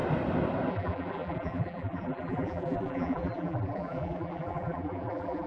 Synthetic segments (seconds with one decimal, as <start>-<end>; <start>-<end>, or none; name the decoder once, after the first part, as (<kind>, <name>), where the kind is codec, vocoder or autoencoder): 0.7-5.5 (vocoder, BigVGAN v2)